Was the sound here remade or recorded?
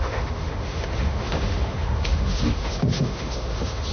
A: remade